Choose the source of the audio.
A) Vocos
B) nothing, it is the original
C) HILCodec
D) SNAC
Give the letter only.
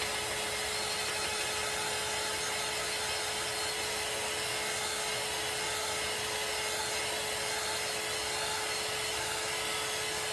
B